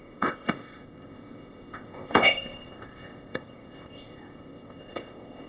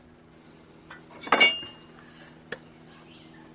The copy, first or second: first